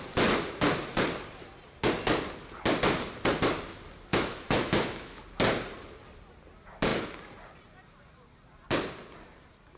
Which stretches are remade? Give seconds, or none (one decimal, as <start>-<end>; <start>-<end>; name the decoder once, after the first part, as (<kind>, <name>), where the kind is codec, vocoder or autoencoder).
4.1-5.2 (autoencoder, DAC-VAE)